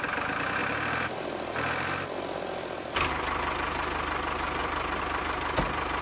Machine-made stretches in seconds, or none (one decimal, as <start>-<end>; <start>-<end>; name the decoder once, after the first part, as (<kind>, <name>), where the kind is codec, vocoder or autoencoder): 0.6-3.1 (vocoder, BigVGAN v2); 4.6-5.2